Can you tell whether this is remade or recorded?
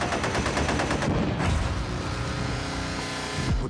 recorded